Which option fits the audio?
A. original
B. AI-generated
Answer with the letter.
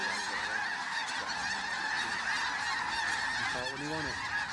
A